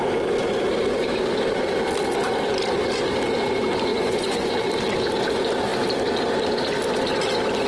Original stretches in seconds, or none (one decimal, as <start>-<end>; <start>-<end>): 0.0-3.9; 4.5-7.7